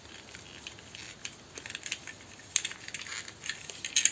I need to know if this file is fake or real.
real